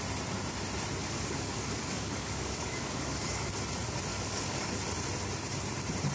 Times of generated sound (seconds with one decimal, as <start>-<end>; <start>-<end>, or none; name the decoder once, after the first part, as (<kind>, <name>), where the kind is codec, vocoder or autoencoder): 1.0-3.5 (codec, DAC); 4.1-4.8